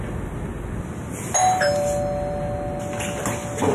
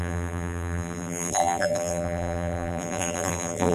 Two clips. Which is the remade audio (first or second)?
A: second